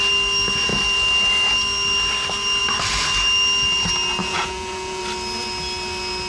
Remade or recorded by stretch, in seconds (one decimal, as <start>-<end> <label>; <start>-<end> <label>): 0.0-4.2 recorded; 4.2-5.0 remade; 5.0-6.3 recorded